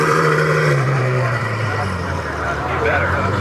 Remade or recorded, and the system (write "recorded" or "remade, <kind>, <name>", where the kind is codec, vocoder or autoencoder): remade, vocoder, BigVGAN v2